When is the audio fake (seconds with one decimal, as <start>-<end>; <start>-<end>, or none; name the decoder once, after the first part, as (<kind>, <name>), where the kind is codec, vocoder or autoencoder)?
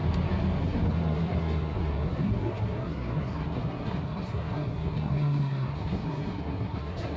0.6-7.2 (codec, SNAC)